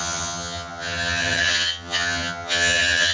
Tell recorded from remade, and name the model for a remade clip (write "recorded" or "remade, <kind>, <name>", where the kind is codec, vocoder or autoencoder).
remade, vocoder, HiFi-GAN